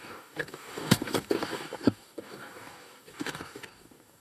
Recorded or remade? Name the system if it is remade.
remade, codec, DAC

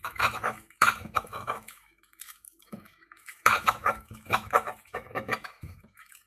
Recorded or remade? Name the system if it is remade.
remade, autoencoder, DAC-VAE